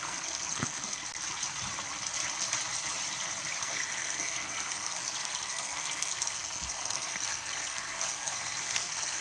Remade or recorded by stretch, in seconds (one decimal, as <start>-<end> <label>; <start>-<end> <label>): 0.0-1.0 remade; 1.0-3.6 recorded; 3.6-9.2 remade